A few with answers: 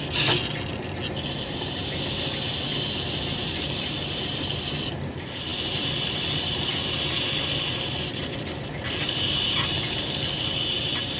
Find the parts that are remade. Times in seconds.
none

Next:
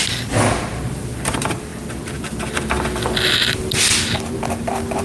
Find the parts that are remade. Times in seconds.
none

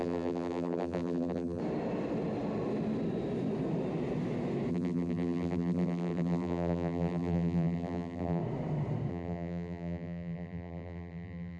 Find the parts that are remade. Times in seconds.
0.0-1.6 (vocoder, BigVGAN v2); 4.7-8.4; 9.1-11.6

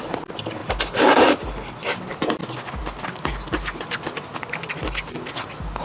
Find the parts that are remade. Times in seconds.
0.6-1.4 (vocoder, BigVGAN v2)

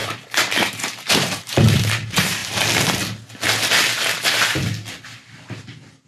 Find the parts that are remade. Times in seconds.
0.0-2.4 (vocoder, BigVGAN v2)

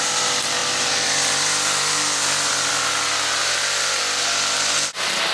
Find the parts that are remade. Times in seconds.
0.6-2.7 (vocoder, BigVGAN v2); 3.4-4.0

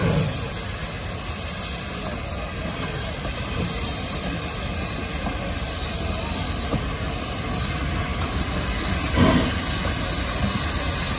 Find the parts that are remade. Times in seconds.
0.0-0.5 (vocoder, BigVGAN v2); 8.1-8.6